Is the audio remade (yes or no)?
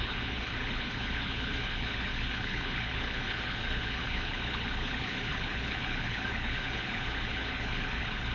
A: yes